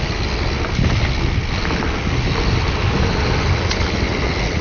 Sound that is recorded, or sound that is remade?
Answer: recorded